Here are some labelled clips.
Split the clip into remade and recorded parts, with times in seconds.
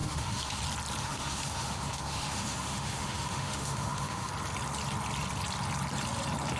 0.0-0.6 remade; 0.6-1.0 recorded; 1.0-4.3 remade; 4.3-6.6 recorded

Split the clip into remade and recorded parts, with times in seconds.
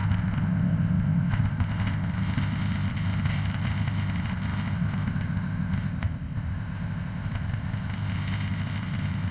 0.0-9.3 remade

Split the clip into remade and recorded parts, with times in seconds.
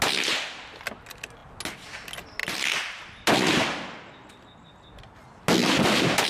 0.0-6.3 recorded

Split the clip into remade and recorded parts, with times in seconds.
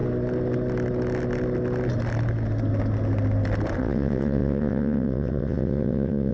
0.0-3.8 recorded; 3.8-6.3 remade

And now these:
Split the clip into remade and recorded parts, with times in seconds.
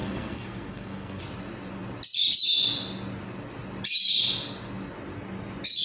0.0-1.2 remade; 1.2-5.8 recorded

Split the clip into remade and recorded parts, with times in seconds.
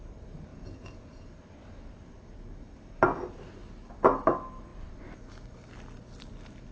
0.0-0.5 recorded; 0.5-1.3 remade; 1.3-6.7 recorded